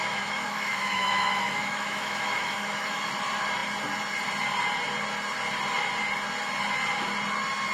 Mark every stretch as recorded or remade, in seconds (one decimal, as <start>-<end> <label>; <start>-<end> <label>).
0.0-3.1 remade; 3.1-7.7 recorded